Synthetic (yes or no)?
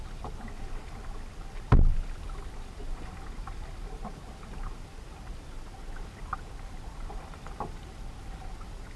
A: no